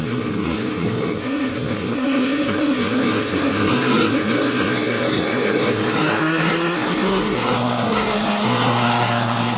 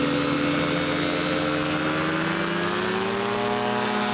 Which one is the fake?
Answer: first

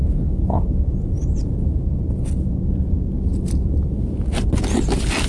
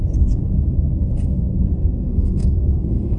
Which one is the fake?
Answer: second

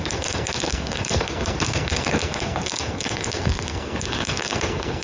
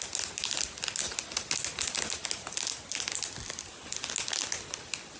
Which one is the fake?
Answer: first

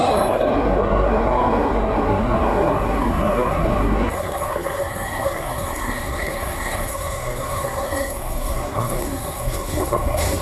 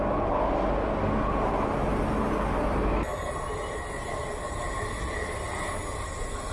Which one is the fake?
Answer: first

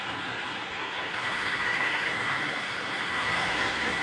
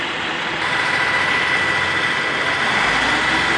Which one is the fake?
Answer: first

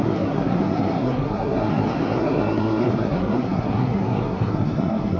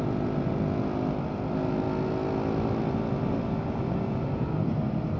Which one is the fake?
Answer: first